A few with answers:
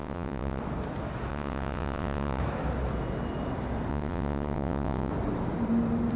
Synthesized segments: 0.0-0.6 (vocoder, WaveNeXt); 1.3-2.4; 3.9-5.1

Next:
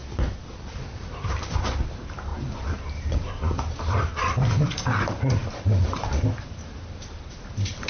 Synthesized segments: 0.8-7.9 (vocoder, BigVGAN v2)

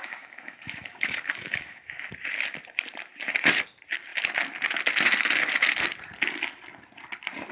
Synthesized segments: 0.0-2.1 (autoencoder, DAC-VAE)